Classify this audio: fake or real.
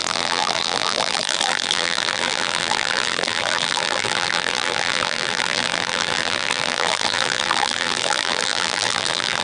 fake